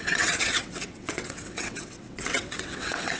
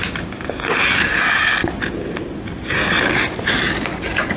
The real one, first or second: second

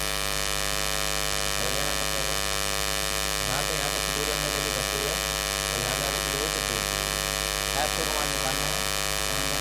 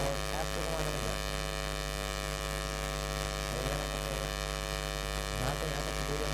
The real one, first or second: first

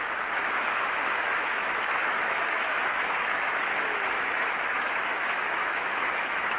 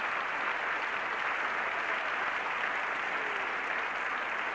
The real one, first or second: second